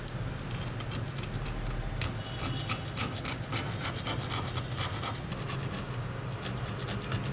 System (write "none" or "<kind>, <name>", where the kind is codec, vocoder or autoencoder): none